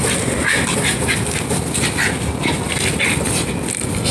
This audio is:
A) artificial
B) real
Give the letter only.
B